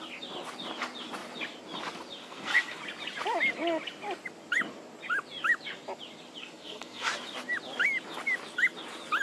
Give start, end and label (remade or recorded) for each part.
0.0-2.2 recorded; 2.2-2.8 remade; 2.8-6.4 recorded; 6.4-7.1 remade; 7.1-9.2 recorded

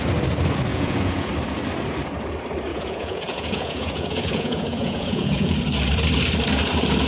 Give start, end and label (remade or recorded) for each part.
0.0-0.7 recorded; 0.7-1.3 remade; 1.3-2.7 recorded; 2.7-5.6 remade; 5.6-7.1 recorded